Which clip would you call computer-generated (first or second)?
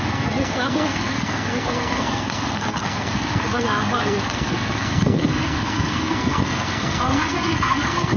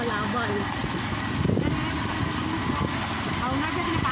first